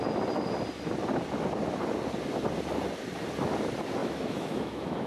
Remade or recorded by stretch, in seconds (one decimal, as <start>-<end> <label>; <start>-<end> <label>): 0.0-4.0 recorded; 4.0-5.1 remade